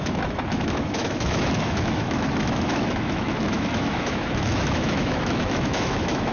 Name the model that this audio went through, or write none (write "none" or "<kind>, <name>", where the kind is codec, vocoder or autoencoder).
autoencoder, DAC-VAE